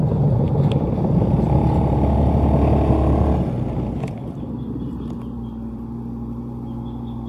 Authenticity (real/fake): real